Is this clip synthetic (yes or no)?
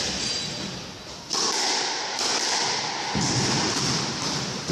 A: no